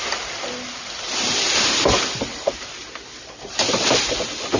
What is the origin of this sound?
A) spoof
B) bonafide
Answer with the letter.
A